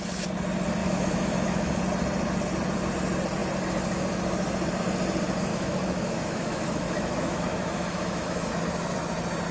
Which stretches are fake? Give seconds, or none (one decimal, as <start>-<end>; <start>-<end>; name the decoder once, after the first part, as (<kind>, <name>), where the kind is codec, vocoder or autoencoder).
0.8-1.8 (autoencoder, DAC-VAE); 5.5-8.5